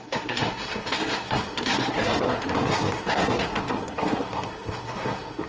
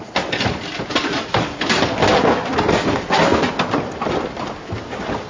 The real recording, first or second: second